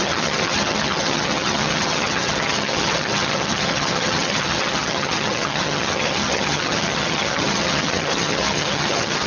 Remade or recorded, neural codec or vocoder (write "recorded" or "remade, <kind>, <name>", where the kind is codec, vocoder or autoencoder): remade, vocoder, HiFi-GAN